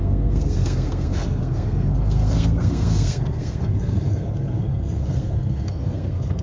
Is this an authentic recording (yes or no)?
no